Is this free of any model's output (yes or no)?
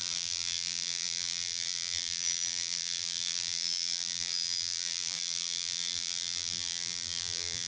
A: no